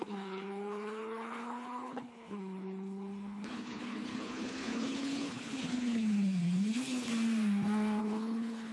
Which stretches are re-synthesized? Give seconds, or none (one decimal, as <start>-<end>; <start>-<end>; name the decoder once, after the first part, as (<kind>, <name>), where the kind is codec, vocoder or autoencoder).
0.0-7.1 (codec, HILCodec); 8.0-8.7